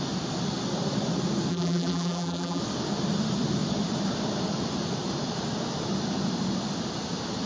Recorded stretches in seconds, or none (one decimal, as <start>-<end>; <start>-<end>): 0.0-1.5; 2.6-7.5